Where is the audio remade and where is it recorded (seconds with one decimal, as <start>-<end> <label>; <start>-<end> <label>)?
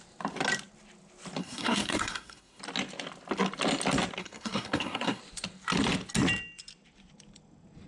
0.0-1.4 recorded; 1.4-2.6 remade; 2.6-4.2 recorded; 4.2-5.2 remade; 5.2-7.9 recorded